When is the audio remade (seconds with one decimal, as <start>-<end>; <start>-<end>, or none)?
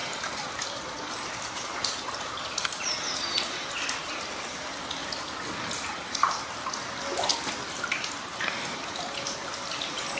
0.0-4.1; 7.3-8.0